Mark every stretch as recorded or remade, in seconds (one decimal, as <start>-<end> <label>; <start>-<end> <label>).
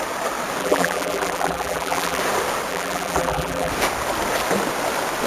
0.0-0.6 recorded; 0.6-2.2 remade; 2.2-2.7 recorded; 2.7-3.7 remade; 3.7-5.3 recorded